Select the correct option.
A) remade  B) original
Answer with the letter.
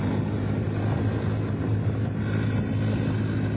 B